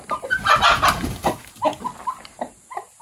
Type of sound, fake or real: real